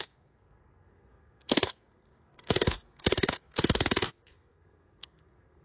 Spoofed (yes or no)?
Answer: yes